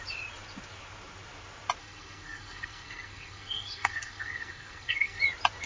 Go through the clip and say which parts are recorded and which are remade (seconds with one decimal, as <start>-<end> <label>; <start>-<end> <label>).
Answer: 0.0-1.8 recorded; 1.8-5.2 remade; 5.2-5.7 recorded